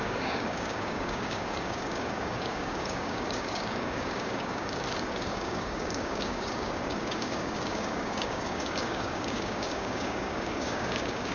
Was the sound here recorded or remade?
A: remade